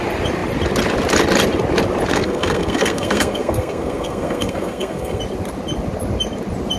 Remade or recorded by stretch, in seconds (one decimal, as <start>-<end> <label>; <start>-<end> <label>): 0.0-2.1 recorded; 2.1-5.2 remade; 5.2-6.8 recorded